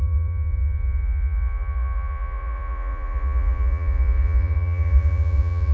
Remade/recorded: remade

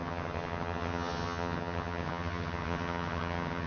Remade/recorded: remade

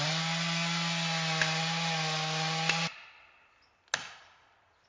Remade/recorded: recorded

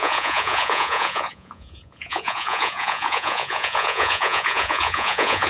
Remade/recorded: remade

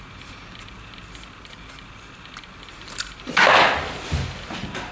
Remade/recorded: recorded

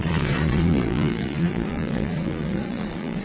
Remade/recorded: remade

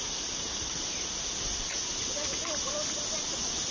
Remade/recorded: recorded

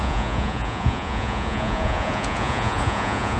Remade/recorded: remade